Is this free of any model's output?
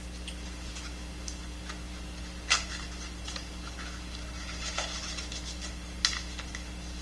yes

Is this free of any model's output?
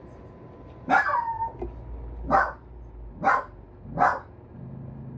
yes